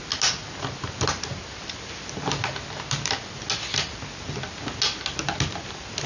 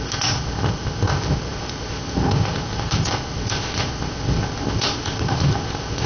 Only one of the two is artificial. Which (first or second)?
second